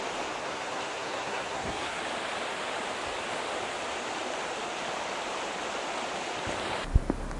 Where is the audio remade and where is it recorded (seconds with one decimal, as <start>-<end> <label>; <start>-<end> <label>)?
0.0-0.4 recorded; 0.4-2.0 remade; 2.0-7.4 recorded